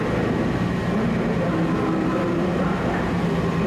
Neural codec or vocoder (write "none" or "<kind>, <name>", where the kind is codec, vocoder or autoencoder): none